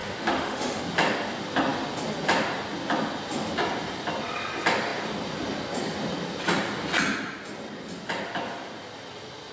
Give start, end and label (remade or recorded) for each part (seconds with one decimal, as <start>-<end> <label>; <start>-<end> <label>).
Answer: 0.0-0.8 remade; 0.8-9.5 recorded